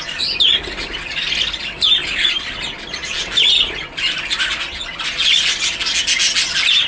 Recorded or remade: recorded